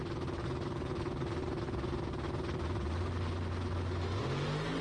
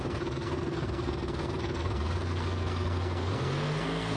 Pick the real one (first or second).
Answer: first